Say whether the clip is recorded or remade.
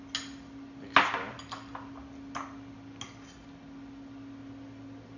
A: recorded